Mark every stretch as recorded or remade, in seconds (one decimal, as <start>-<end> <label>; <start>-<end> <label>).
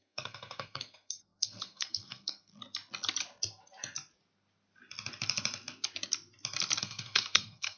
0.0-2.5 remade; 2.5-6.8 recorded; 6.8-7.8 remade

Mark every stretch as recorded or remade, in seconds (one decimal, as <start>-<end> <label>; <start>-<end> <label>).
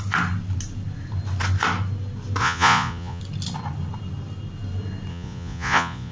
0.0-2.4 recorded; 2.4-3.2 remade; 3.2-5.1 recorded; 5.1-6.1 remade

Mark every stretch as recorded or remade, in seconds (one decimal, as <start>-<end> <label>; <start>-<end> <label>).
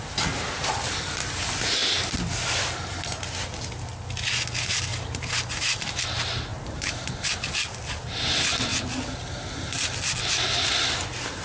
0.0-4.9 recorded; 4.9-6.0 remade; 6.0-6.5 recorded; 6.5-7.5 remade; 7.5-11.4 recorded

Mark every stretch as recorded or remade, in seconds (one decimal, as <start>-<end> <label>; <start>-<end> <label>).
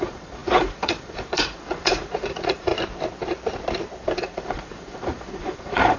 0.0-2.7 remade; 2.7-4.2 recorded; 4.2-6.0 remade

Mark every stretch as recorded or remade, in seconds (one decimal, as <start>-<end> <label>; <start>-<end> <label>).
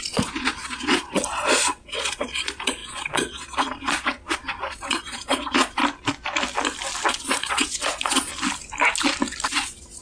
0.0-5.8 remade; 5.8-7.1 recorded; 7.1-8.3 remade; 8.3-9.5 recorded; 9.5-10.0 remade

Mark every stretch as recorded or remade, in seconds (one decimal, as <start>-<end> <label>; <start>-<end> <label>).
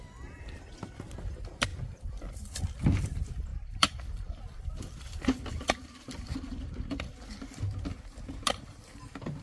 0.0-1.7 recorded; 1.7-2.6 remade; 2.6-3.5 recorded; 3.5-7.6 remade; 7.6-9.4 recorded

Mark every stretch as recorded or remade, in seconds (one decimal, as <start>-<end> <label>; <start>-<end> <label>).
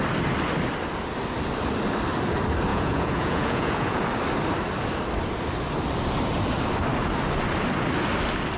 0.0-2.7 recorded; 2.7-4.0 remade; 4.0-8.6 recorded